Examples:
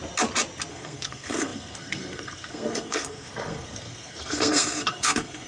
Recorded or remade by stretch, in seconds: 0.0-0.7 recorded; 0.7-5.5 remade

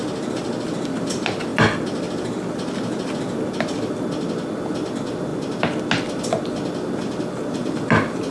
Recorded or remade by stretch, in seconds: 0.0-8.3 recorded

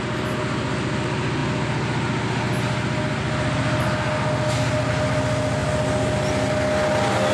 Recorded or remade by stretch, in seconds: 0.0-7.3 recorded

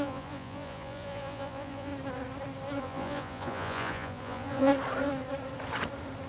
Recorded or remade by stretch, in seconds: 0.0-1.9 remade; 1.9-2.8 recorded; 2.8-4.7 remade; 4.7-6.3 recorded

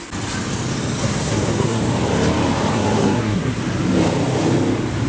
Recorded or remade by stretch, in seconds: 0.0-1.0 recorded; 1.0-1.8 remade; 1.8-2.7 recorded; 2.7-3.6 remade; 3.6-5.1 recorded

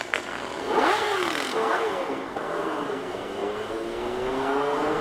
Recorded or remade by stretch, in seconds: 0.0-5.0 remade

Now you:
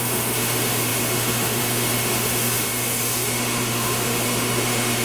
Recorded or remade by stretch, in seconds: 0.0-5.0 remade

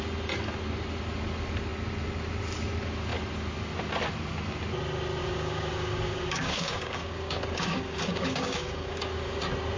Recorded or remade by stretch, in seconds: 0.0-5.2 recorded; 5.2-9.4 remade; 9.4-9.8 recorded